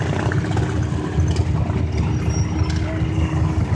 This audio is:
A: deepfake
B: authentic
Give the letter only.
B